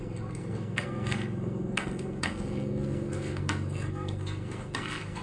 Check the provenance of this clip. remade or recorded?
remade